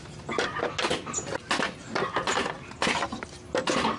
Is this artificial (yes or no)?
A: no